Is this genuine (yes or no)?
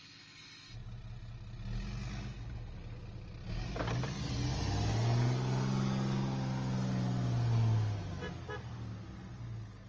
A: yes